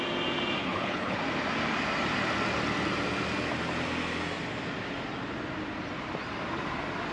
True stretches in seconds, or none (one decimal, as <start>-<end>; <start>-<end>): 0.0-0.6; 1.2-7.1